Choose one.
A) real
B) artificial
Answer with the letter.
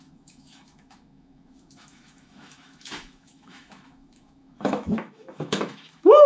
B